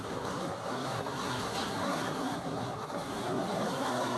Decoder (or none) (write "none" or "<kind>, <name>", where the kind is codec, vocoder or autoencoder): codec, SNAC